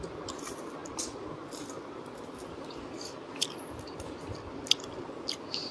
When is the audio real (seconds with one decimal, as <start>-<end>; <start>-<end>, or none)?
0.0-5.7